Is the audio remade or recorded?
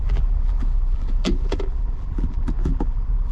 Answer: remade